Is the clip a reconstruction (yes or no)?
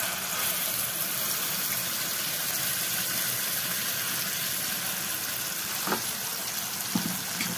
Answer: no